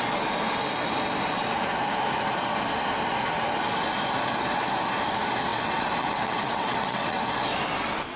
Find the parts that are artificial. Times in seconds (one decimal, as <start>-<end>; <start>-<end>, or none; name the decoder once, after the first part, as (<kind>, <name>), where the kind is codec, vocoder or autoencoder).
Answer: 5.5-7.2 (vocoder, WaveNeXt)